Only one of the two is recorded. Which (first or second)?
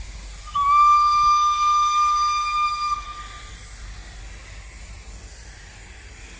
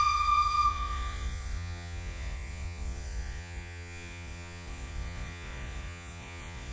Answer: first